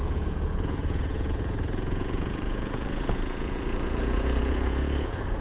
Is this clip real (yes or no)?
no